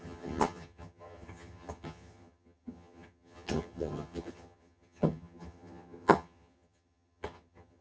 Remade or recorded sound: remade